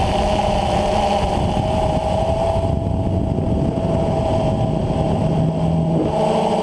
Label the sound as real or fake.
real